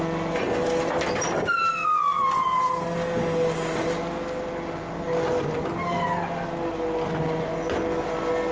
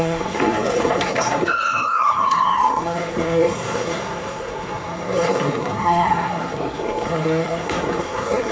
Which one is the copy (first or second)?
second